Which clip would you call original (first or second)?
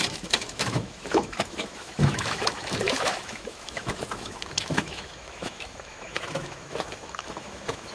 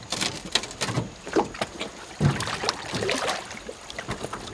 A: second